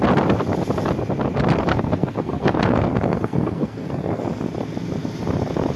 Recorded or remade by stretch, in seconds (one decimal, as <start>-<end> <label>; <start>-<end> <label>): 0.0-1.7 recorded; 1.7-4.2 remade; 4.2-5.8 recorded